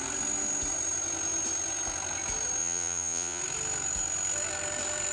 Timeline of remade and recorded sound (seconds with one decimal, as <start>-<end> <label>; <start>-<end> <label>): 0.0-2.6 recorded; 2.6-3.4 remade; 3.4-5.1 recorded